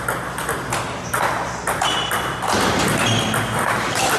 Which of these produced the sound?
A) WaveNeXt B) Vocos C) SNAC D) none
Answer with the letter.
D